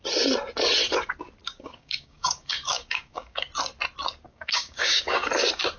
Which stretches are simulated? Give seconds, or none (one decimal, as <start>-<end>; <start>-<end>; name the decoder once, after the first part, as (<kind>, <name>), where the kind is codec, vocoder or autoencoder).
1.4-3.5 (codec, DAC); 4.3-5.3

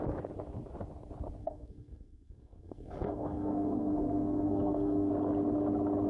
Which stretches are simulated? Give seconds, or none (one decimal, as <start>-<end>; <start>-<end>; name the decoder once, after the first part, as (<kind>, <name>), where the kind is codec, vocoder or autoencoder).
1.4-5.1 (codec, SNAC)

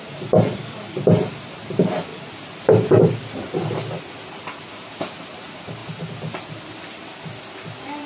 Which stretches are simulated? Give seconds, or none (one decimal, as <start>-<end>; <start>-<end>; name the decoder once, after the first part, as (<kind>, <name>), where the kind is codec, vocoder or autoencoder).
none

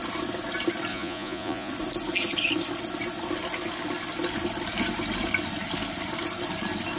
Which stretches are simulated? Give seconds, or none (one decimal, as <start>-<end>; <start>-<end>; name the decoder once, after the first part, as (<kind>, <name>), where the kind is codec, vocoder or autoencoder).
0.9-1.7 (vocoder, Vocos)

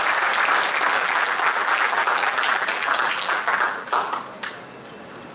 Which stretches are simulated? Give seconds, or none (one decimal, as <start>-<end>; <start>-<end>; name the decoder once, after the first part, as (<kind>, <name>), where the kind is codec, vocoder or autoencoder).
0.9-4.1 (vocoder, BigVGAN v2)

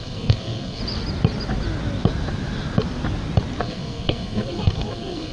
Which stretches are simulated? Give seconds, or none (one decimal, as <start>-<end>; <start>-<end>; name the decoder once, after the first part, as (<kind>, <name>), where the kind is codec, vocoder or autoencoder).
0.0-0.8 (codec, SNAC); 3.6-5.3

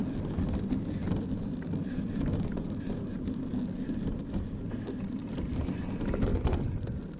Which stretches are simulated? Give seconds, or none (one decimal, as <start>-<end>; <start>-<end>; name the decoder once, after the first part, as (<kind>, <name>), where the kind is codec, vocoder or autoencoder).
5.2-5.8 (vocoder, BigVGAN v2)